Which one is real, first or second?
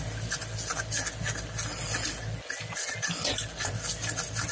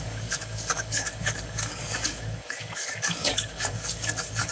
first